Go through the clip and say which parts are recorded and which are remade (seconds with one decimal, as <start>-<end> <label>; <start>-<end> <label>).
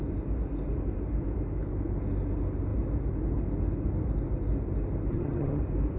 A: 0.0-5.1 recorded; 5.1-5.6 remade; 5.6-6.0 recorded